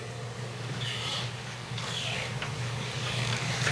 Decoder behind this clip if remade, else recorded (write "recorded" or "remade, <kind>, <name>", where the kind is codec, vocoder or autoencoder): remade, codec, DAC